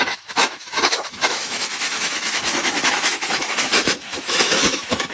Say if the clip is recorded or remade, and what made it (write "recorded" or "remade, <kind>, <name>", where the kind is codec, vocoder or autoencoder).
remade, autoencoder, DAC-VAE